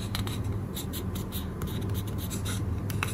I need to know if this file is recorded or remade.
recorded